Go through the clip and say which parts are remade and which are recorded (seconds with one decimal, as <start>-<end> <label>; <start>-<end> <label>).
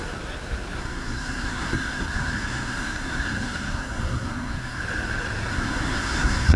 0.0-0.8 recorded; 0.8-4.8 remade; 4.8-5.5 recorded; 5.5-6.6 remade